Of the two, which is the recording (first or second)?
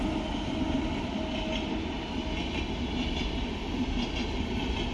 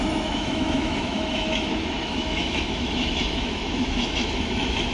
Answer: first